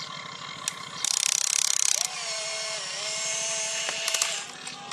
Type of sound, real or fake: real